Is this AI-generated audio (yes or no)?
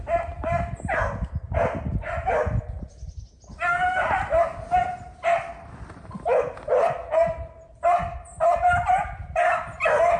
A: no